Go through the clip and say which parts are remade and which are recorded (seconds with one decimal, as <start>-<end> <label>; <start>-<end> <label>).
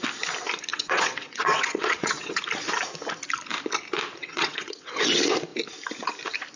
0.0-0.7 recorded; 0.7-2.4 remade; 2.4-4.2 recorded; 4.2-5.0 remade; 5.0-6.6 recorded